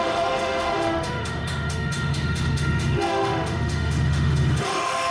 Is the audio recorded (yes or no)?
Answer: no